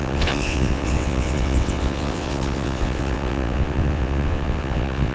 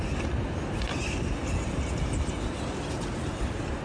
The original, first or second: second